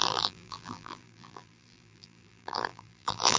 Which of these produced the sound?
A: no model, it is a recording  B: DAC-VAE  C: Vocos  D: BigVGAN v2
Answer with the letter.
D